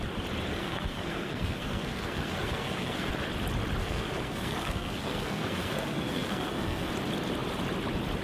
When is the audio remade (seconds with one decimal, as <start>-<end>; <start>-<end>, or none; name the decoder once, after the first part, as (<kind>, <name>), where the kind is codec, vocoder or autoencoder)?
0.6-3.1 (codec, SNAC); 3.8-6.9